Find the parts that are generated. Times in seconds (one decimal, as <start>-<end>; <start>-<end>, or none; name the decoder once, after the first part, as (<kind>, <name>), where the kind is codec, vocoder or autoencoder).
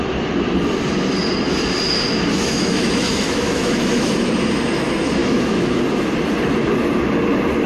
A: 2.4-4.3 (autoencoder, DAC-VAE); 5.2-5.8